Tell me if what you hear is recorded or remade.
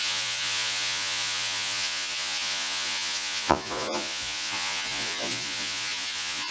remade